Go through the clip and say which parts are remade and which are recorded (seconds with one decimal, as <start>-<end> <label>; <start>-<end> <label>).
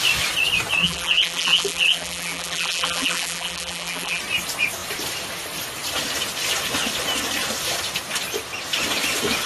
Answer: 0.0-0.8 recorded; 0.8-4.2 remade; 4.2-9.5 recorded